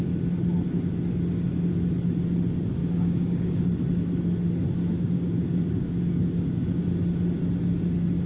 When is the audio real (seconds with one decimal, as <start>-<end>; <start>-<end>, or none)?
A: 0.0-2.8; 3.6-4.8; 6.8-8.3

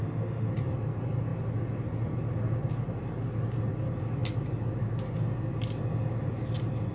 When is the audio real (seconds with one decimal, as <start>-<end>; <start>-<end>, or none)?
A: 0.5-6.9